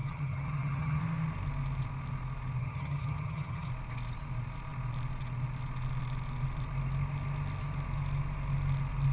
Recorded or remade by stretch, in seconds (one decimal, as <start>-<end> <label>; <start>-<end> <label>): 0.0-1.0 remade; 1.0-2.6 recorded; 2.6-3.7 remade; 3.7-9.1 recorded